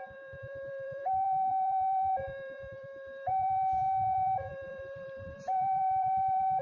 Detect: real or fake fake